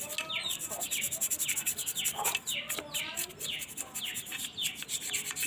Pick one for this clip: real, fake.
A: real